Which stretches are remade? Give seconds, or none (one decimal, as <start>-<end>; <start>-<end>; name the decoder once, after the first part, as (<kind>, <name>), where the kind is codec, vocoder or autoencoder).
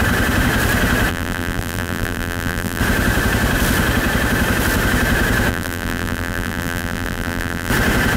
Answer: 1.1-2.8 (vocoder, BigVGAN v2); 5.5-7.7